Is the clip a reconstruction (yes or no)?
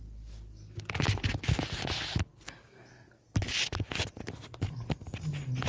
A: no